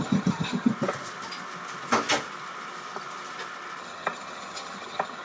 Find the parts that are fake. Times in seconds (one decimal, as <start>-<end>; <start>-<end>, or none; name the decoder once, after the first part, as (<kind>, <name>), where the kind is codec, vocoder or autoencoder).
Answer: 0.0-0.7 (vocoder, HiFi-GAN); 3.8-5.2